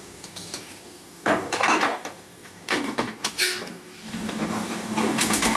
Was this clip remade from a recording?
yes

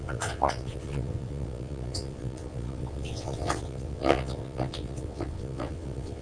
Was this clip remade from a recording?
yes